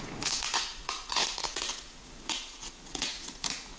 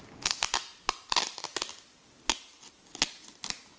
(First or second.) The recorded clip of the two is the second